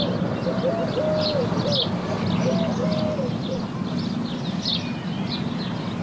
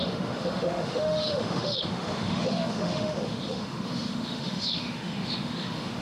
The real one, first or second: first